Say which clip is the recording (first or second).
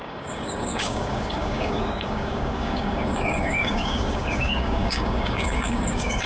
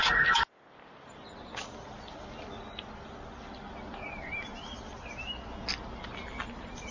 second